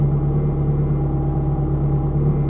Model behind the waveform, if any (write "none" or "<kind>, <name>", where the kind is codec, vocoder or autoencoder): none